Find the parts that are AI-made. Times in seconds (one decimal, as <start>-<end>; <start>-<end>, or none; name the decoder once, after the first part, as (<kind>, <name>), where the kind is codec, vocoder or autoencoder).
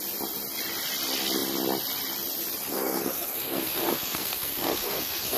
2.7-5.4 (codec, SNAC)